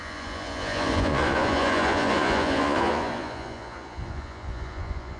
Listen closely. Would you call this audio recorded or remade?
remade